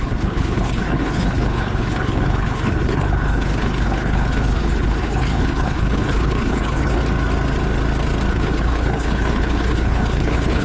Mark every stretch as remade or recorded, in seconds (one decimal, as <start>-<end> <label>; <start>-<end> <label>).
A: 0.0-7.0 remade; 7.0-8.3 recorded; 8.3-10.6 remade